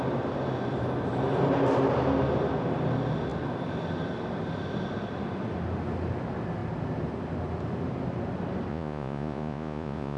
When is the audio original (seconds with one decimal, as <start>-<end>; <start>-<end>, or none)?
0.0-8.7